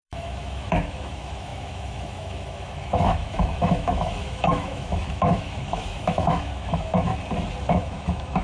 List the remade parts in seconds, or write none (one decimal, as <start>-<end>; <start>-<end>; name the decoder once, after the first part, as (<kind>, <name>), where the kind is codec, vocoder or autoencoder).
0.0-7.1 (autoencoder, DAC-VAE); 7.7-8.4